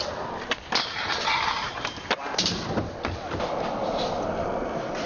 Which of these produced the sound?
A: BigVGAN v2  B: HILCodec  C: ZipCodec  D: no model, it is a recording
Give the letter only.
D